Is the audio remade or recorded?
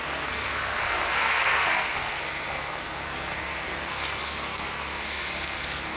remade